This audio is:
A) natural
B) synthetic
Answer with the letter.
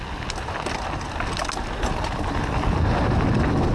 A